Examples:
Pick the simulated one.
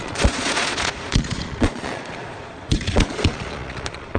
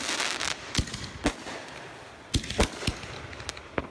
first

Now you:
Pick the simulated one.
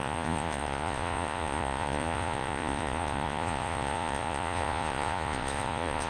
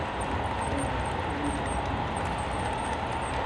first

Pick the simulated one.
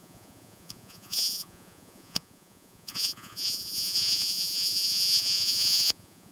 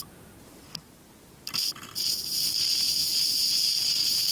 first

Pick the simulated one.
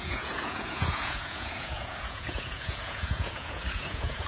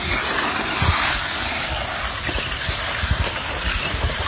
first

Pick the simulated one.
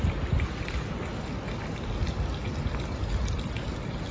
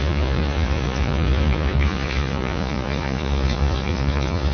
second